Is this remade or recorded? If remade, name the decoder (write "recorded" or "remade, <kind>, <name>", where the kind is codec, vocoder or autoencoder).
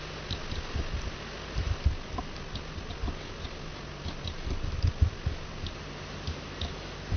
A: recorded